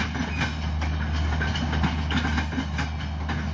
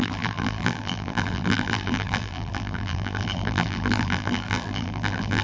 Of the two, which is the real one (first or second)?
first